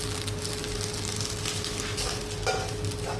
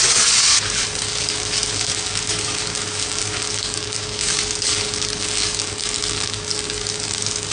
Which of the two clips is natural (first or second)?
first